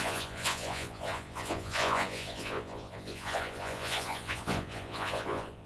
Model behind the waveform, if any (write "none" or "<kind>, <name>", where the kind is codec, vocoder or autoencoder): vocoder, Vocos